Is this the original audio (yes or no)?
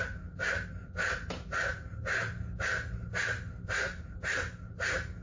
yes